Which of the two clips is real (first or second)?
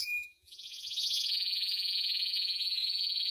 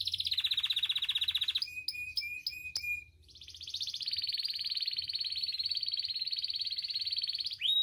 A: second